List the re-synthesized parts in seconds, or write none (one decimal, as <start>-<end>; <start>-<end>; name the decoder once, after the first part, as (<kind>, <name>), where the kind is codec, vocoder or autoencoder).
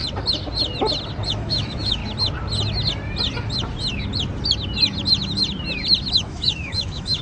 1.3-2.0 (autoencoder, DAC-VAE); 6.1-7.2